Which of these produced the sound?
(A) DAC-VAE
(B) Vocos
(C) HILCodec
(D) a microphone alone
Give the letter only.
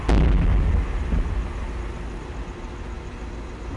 D